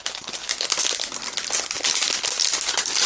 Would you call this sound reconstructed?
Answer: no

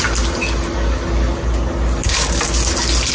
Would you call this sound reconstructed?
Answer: no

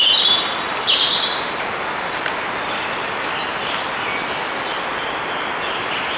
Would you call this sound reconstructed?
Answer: no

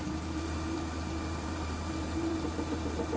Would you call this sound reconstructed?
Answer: yes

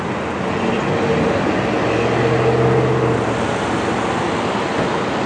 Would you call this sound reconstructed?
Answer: no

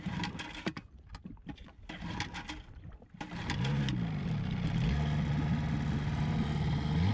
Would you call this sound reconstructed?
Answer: no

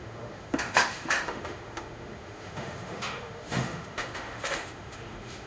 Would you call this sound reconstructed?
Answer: yes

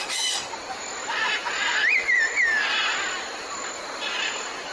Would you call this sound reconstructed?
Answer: no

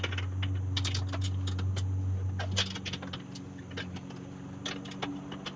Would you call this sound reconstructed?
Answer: no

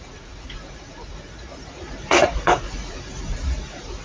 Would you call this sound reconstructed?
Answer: yes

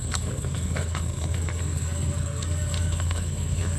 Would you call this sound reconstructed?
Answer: yes